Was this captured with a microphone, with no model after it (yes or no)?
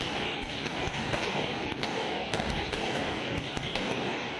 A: no